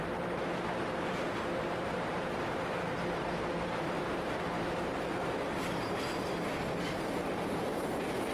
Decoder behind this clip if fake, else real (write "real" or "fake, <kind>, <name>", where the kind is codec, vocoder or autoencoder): fake, vocoder, BigVGAN v2